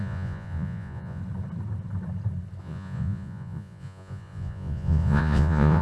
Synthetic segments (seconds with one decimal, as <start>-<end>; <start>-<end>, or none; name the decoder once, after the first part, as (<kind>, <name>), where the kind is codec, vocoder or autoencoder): 0.0-1.2 (vocoder, Vocos); 2.6-5.8